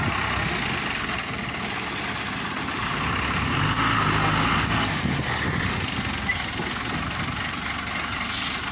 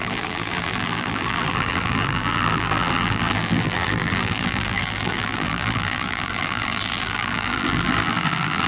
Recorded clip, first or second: first